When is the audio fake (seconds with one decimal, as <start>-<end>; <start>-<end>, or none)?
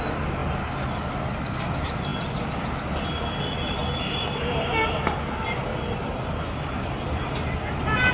none